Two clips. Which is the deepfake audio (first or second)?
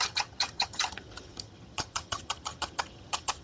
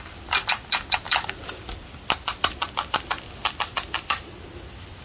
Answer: first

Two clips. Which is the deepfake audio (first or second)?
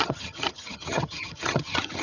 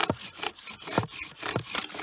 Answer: first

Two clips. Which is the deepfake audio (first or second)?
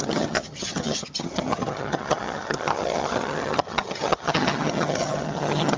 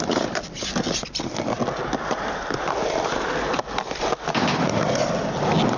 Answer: first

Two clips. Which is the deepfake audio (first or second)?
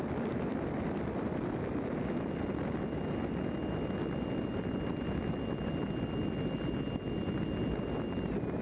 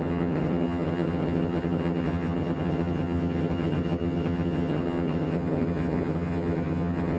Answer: second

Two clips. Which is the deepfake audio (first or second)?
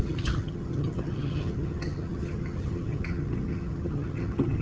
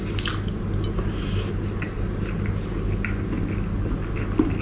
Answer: first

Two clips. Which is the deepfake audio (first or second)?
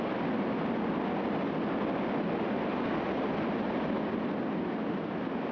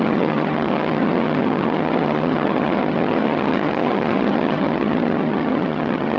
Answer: second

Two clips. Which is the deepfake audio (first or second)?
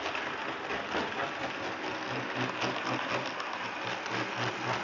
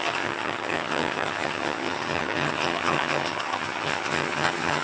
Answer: second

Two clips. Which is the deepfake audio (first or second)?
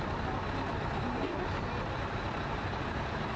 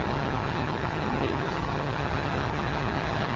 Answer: second